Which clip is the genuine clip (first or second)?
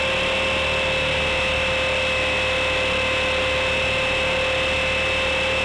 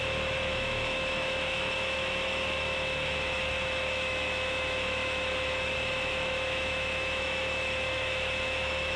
first